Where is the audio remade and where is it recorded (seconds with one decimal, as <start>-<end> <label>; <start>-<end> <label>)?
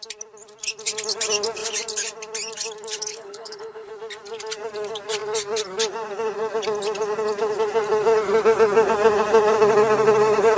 0.0-3.1 recorded; 3.1-3.9 remade; 3.9-10.6 recorded